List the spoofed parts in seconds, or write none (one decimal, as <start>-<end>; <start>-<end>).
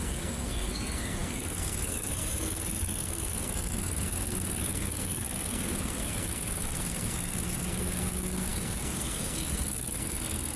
0.0-10.6